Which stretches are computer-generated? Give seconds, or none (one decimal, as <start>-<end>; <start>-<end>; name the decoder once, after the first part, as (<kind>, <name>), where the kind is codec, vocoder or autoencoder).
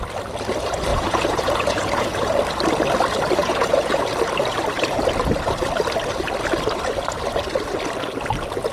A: 0.9-2.3 (vocoder, Vocos); 3.4-4.0